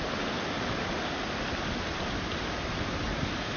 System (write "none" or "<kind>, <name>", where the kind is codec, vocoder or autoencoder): none